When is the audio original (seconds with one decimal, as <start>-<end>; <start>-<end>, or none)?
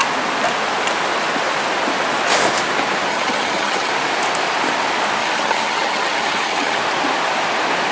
0.0-3.1; 3.9-5.2; 6.8-7.9